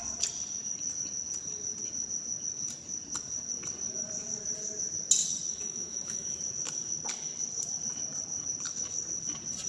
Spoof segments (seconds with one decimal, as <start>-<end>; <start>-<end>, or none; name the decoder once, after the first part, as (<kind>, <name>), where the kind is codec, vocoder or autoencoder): 5.5-6.4 (autoencoder, DAC-VAE)